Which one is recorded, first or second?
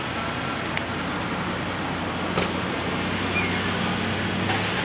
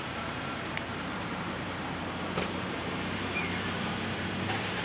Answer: first